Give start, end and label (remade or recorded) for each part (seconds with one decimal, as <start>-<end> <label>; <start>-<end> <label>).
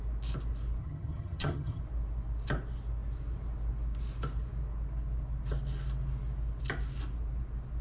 0.0-0.8 recorded; 0.8-1.8 remade; 1.8-7.8 recorded